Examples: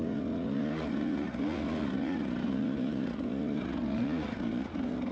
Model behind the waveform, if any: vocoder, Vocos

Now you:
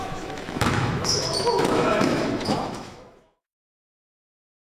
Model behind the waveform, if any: autoencoder, DAC-VAE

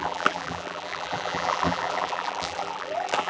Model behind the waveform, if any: vocoder, BigVGAN v2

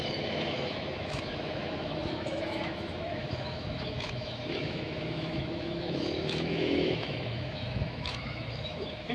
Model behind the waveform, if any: autoencoder, DAC-VAE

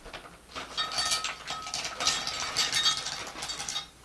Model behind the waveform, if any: none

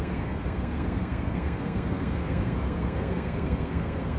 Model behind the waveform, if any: codec, SNAC